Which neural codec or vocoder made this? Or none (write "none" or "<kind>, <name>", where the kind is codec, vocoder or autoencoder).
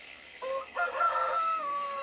codec, SNAC